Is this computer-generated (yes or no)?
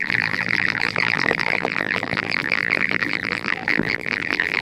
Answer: yes